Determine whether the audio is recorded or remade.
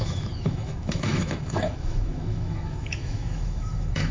remade